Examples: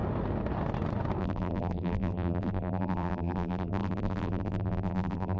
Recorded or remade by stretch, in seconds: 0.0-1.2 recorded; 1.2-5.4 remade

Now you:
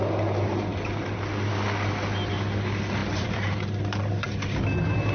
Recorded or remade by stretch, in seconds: 0.0-3.0 recorded; 3.0-4.6 remade; 4.6-5.1 recorded

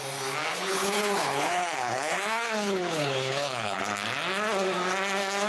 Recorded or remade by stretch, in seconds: 0.0-0.5 recorded; 0.5-3.8 remade; 3.8-5.5 recorded

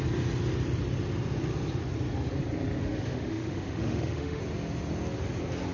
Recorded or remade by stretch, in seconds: 0.0-2.8 recorded; 2.8-4.4 remade; 4.4-5.7 recorded

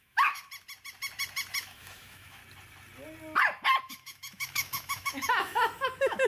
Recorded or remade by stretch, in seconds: 0.0-0.4 remade; 0.4-1.6 recorded; 1.6-2.4 remade; 2.4-3.8 recorded; 3.8-6.3 remade

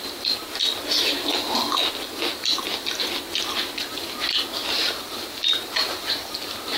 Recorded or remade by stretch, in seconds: 0.0-6.8 recorded

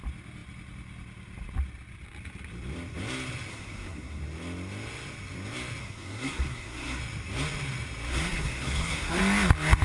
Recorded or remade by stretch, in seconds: 0.0-3.5 recorded; 3.5-4.2 remade; 4.2-5.8 recorded; 5.8-7.0 remade; 7.0-8.1 recorded; 8.1-9.2 remade; 9.2-9.8 recorded